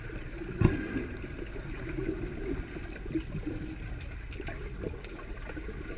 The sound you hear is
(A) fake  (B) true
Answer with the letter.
B